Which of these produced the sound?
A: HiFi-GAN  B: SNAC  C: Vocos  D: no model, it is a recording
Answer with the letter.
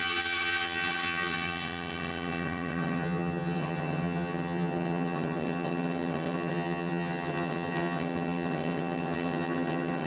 A